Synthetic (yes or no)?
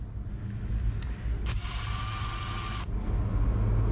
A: no